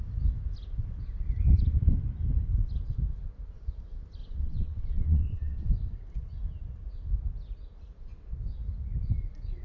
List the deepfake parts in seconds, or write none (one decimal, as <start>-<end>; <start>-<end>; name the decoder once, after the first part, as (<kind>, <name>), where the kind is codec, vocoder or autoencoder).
4.2-5.7 (vocoder, WaveNeXt)